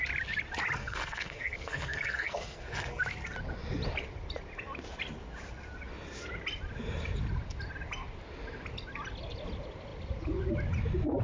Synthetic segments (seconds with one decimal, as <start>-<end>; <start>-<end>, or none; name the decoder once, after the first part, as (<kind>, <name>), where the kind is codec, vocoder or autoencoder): 0.8-3.0 (codec, SNAC)